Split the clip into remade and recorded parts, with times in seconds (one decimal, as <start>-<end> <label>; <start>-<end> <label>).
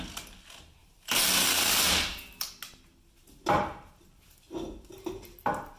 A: 0.0-0.8 recorded; 0.8-2.5 remade; 2.5-5.8 recorded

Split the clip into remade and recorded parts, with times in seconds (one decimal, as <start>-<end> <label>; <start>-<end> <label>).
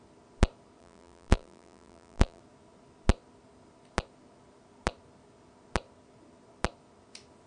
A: 0.0-0.8 recorded; 0.8-2.4 remade; 2.4-7.5 recorded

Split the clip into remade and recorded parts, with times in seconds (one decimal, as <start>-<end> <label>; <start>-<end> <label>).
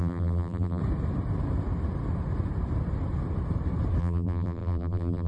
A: 0.0-0.8 remade; 0.8-4.0 recorded; 4.0-5.3 remade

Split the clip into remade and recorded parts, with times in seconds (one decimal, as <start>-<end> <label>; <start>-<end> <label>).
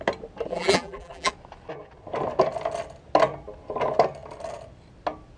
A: 0.0-0.5 recorded; 0.5-1.3 remade; 1.3-5.4 recorded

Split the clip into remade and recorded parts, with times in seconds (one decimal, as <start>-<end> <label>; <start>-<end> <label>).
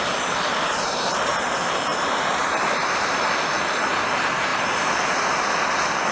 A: 0.0-0.5 recorded; 0.5-1.3 remade; 1.3-1.9 recorded; 1.9-3.3 remade; 3.3-4.5 recorded; 4.5-5.5 remade; 5.5-6.1 recorded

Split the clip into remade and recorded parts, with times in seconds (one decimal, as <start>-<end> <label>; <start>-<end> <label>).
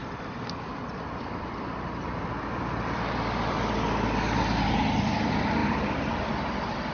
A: 0.0-3.6 remade; 3.6-5.6 recorded; 5.6-6.2 remade; 6.2-6.9 recorded